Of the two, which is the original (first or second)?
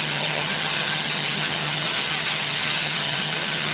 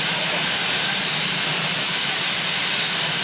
second